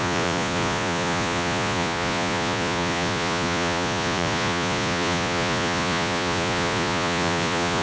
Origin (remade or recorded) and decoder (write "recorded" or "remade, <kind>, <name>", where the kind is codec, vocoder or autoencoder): remade, vocoder, Vocos